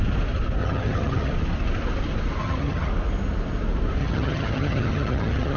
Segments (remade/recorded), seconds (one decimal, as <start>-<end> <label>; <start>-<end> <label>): 0.0-0.6 recorded; 0.6-1.3 remade; 1.3-2.4 recorded; 2.4-2.9 remade; 2.9-4.0 recorded; 4.0-5.6 remade